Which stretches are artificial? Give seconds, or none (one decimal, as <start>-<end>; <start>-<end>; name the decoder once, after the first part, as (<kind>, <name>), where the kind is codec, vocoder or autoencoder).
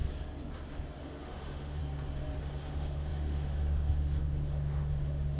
1.0-1.8 (autoencoder, DAC-VAE); 2.4-5.4